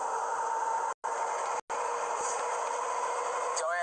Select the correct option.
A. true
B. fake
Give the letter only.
A